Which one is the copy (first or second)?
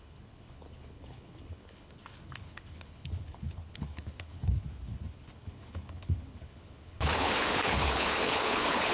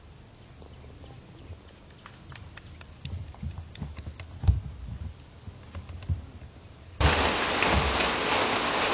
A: first